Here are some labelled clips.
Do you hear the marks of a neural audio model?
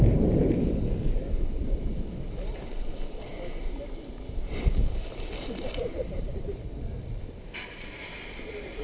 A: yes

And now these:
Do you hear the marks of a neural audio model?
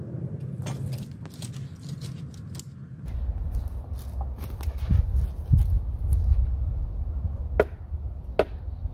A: no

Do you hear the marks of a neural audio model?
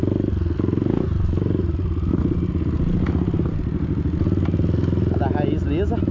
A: no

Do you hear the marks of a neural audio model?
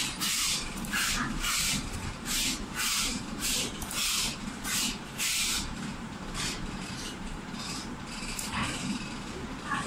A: yes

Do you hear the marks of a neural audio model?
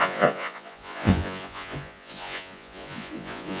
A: yes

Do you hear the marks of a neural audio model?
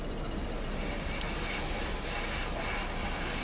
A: no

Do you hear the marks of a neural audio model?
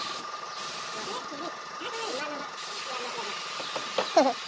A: no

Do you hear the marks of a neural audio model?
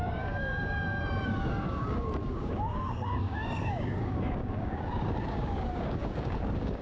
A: yes